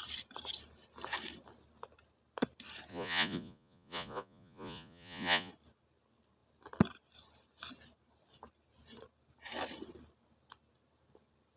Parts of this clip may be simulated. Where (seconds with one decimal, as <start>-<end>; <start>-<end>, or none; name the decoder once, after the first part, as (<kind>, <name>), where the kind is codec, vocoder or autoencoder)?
2.9-5.5 (vocoder, Vocos)